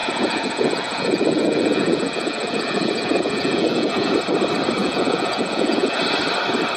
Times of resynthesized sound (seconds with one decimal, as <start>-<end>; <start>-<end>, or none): 0.0-4.1; 4.8-6.0

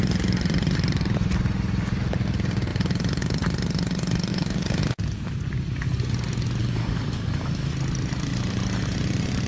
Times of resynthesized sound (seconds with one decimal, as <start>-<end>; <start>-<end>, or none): 4.3-4.8; 6.6-7.7

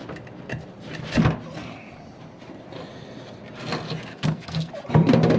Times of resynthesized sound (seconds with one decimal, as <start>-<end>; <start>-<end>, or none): 4.1-4.7

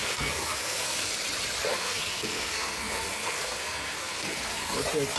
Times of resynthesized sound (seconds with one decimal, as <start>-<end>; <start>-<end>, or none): 0.0-1.1; 1.7-4.8

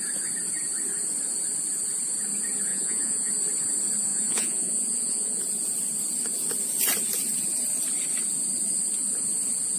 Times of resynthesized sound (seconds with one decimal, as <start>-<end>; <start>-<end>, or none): 2.7-3.3; 4.1-5.4

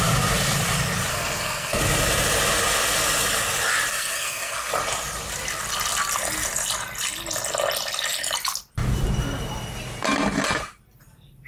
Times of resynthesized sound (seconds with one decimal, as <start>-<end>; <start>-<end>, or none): 1.1-1.8; 3.9-4.7

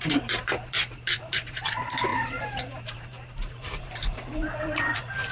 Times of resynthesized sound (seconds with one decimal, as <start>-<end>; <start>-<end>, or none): 0.0-5.3